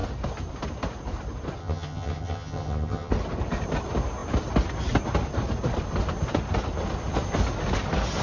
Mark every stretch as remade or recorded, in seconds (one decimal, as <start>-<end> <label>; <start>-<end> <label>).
0.0-1.6 recorded; 1.6-3.1 remade; 3.1-8.2 recorded